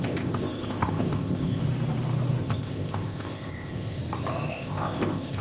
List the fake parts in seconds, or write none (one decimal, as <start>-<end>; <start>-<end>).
0.0-1.6; 2.4-4.0; 4.5-5.4